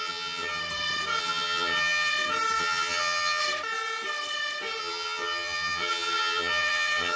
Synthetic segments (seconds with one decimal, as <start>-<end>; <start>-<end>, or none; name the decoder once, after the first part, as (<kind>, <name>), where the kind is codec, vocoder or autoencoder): 0.0-0.6 (vocoder, HiFi-GAN); 1.2-2.1; 2.6-3.4; 4.8-7.2